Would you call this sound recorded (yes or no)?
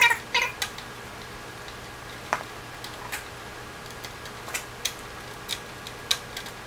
yes